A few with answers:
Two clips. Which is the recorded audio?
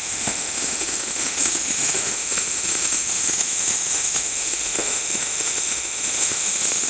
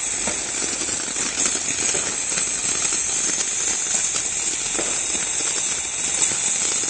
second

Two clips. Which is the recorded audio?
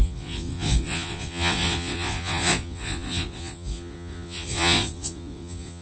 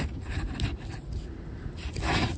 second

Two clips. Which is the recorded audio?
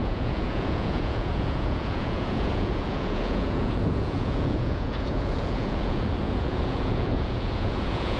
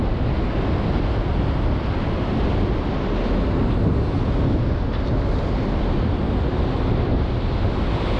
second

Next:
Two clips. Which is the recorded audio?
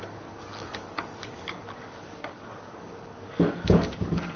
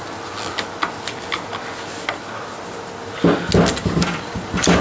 second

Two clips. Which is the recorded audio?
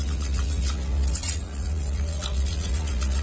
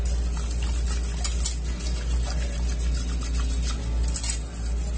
second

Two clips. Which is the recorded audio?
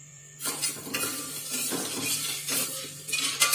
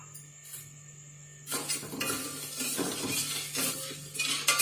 second